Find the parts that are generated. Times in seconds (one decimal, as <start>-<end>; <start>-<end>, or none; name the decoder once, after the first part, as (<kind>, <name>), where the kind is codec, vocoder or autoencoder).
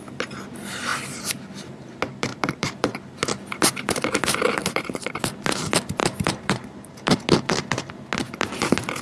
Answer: 0.9-1.5 (vocoder, BigVGAN v2); 2.3-3.0; 4.6-5.2; 6.0-7.2